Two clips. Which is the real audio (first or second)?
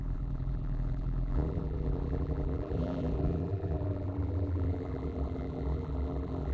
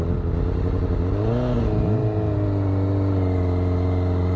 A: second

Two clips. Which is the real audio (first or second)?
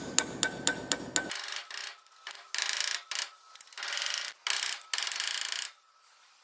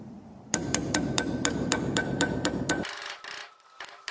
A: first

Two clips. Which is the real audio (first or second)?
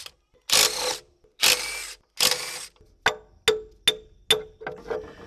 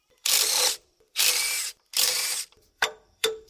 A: first